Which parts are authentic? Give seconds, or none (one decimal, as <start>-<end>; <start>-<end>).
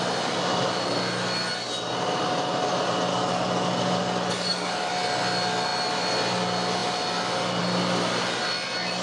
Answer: 0.0-3.1; 4.9-9.0